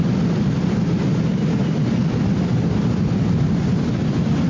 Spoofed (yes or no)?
no